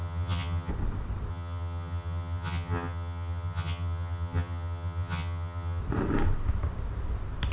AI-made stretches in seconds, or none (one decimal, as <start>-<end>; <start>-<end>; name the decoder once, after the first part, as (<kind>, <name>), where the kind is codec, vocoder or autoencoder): 0.0-0.7 (vocoder, HiFi-GAN); 1.3-5.8